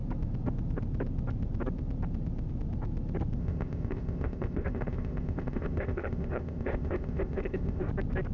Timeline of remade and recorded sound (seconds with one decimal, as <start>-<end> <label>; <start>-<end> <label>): 0.0-3.4 recorded; 3.4-7.8 remade; 7.8-8.3 recorded